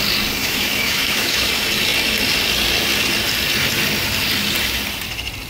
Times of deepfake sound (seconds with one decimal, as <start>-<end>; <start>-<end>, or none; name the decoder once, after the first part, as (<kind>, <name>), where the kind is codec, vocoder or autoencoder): 0.4-1.5 (autoencoder, DAC-VAE)